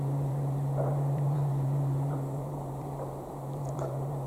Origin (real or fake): fake